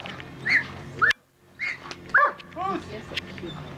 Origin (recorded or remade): recorded